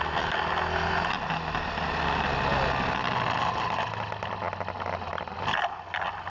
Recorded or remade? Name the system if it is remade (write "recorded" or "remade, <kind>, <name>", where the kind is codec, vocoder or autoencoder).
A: recorded